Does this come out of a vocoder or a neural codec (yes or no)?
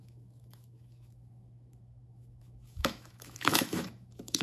yes